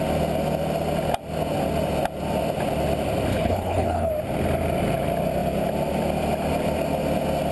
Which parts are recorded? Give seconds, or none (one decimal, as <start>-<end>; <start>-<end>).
0.0-3.3; 4.1-7.5